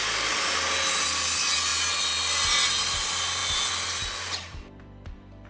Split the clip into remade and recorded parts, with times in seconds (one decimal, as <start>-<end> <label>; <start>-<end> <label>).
0.0-3.4 recorded; 3.4-5.5 remade